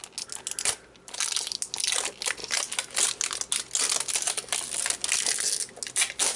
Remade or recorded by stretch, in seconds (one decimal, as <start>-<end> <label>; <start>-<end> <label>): 0.0-6.4 recorded